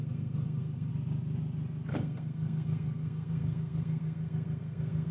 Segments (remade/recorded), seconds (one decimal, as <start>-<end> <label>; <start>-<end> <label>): 0.0-0.9 remade; 0.9-1.9 recorded; 1.9-5.1 remade